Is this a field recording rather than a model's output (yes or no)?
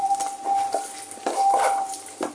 no